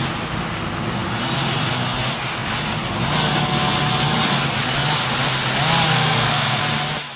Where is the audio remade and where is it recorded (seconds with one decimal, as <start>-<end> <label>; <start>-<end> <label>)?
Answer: 0.0-5.9 recorded; 5.9-6.6 remade; 6.6-7.2 recorded